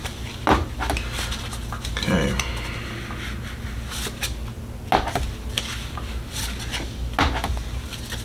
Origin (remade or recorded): recorded